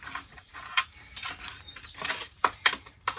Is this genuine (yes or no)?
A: no